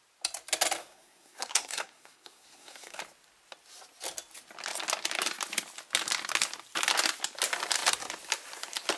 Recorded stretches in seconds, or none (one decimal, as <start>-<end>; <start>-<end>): 0.0-0.8; 3.0-9.0